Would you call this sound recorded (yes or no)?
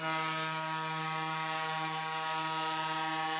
yes